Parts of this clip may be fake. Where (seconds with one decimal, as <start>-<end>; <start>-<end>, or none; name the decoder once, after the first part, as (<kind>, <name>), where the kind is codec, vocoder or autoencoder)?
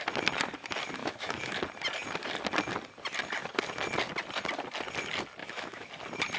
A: 1.0-1.5 (autoencoder, DAC-VAE); 5.4-5.9